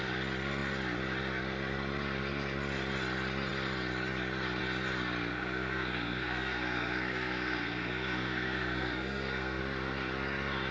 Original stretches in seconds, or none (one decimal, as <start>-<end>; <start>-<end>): 0.0-5.3; 9.6-10.7